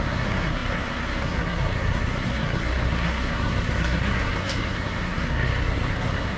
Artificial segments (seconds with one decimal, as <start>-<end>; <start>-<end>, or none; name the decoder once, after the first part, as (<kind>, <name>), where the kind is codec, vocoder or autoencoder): 0.0-6.4 (codec, SNAC)